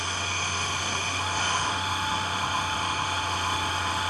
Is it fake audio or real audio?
fake